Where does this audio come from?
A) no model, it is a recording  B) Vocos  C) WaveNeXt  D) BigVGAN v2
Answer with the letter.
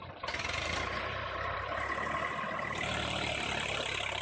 D